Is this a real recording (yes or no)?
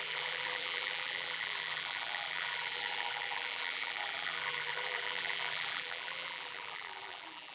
no